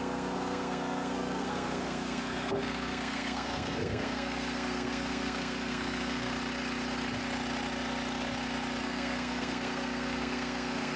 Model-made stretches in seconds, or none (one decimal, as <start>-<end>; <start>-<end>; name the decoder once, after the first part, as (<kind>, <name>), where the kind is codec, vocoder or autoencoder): 0.0-6.3 (codec, SNAC); 8.8-11.0